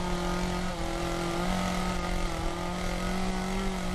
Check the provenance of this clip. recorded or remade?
recorded